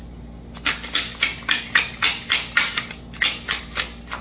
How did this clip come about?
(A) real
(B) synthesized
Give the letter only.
A